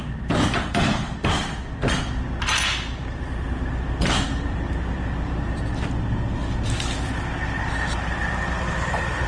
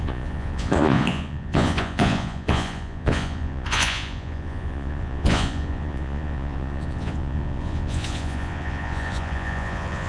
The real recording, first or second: first